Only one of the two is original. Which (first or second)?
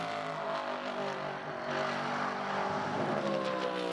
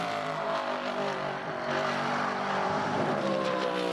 first